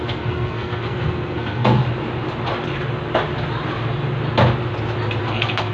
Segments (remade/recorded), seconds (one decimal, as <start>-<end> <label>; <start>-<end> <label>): 0.0-1.8 remade; 1.8-5.2 recorded; 5.2-5.7 remade

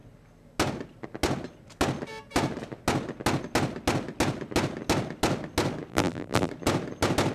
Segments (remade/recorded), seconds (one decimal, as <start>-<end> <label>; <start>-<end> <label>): 0.0-5.9 recorded; 5.9-6.5 remade; 6.5-7.3 recorded